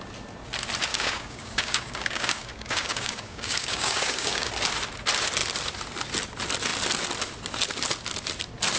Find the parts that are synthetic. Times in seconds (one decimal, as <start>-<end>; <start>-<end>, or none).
0.9-4.5